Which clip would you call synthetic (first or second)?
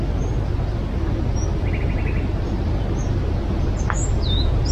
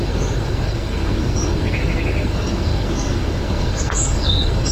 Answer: second